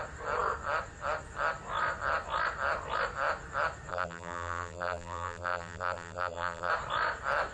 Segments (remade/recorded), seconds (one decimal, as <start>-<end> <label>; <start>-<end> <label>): 0.0-3.9 recorded; 3.9-6.7 remade; 6.7-7.5 recorded